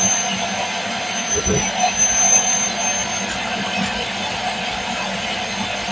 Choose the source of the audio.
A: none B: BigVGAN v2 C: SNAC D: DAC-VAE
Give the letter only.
A